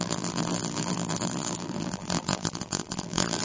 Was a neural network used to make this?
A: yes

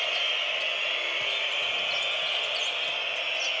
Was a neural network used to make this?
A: no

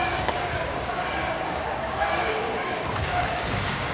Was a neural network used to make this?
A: yes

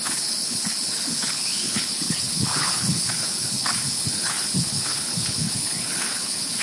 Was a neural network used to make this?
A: yes